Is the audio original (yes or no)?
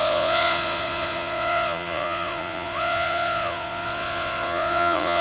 no